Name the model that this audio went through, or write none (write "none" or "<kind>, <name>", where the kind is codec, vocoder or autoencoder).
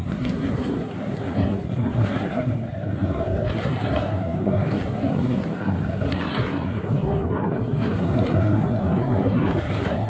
codec, SNAC